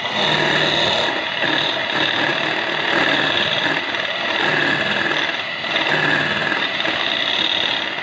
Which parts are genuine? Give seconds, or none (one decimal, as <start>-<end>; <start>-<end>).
0.0-8.0

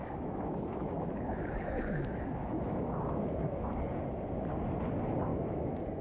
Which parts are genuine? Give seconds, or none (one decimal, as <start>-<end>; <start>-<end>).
3.6-5.3

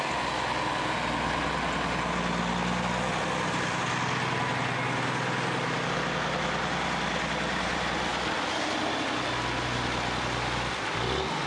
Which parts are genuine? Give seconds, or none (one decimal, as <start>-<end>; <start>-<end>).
0.0-11.5